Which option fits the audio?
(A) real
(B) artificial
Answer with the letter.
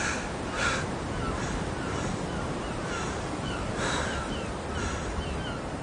A